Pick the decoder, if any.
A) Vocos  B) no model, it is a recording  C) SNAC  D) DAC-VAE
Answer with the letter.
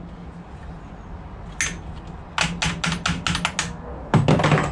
B